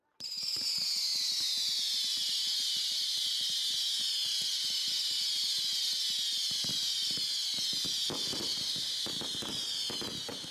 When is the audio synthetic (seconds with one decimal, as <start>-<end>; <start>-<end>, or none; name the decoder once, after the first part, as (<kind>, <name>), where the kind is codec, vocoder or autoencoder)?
8.5-9.5 (vocoder, BigVGAN v2)